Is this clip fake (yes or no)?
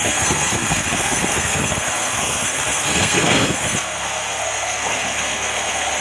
yes